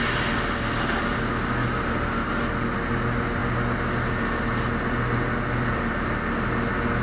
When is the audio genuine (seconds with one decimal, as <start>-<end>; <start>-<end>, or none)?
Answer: 0.0-7.0